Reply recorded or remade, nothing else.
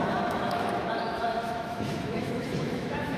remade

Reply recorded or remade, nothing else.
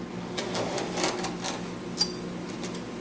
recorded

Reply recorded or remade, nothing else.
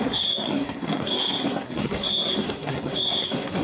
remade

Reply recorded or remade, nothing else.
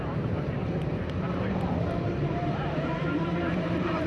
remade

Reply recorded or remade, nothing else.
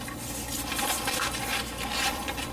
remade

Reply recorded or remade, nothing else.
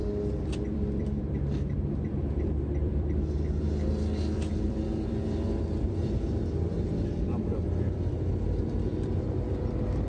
remade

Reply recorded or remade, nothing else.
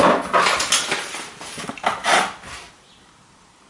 recorded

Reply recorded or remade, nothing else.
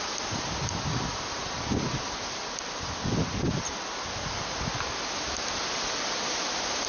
recorded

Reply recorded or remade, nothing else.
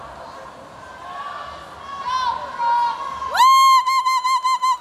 recorded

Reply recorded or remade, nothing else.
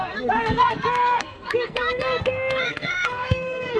remade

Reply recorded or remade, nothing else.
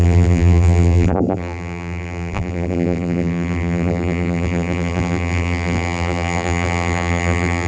remade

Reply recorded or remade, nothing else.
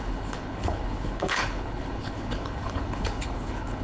remade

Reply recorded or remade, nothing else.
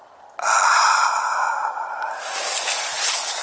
recorded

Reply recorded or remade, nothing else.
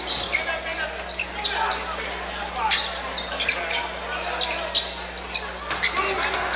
recorded